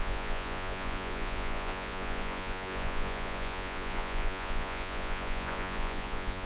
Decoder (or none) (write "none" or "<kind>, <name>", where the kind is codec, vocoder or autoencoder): vocoder, Vocos